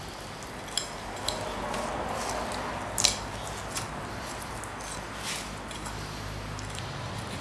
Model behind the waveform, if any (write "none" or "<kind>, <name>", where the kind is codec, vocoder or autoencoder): none